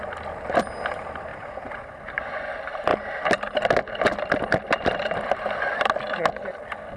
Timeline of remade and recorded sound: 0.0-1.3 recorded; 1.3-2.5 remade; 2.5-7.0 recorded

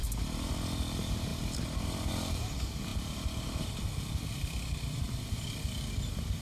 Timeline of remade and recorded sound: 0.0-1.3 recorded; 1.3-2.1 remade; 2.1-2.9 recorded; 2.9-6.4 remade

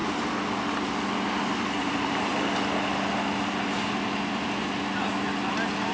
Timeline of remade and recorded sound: 0.0-5.9 recorded

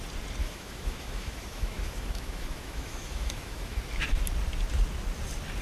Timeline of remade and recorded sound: 0.0-0.4 recorded; 0.4-3.8 remade; 3.8-5.6 recorded